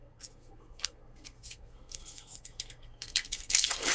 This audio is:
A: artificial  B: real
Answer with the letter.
A